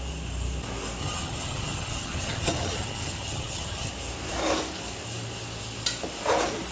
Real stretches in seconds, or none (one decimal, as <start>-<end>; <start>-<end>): 0.0-1.0; 3.9-6.7